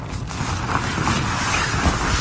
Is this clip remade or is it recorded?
recorded